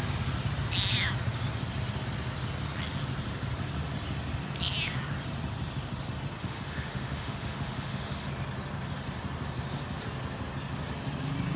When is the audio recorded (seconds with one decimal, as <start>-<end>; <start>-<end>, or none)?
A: 0.0-6.4; 8.3-11.6